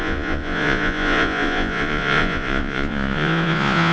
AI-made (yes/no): yes